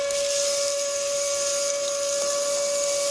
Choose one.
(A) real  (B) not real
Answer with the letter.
A